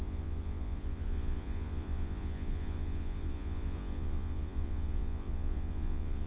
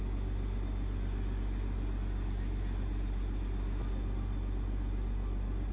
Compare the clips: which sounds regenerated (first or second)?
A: first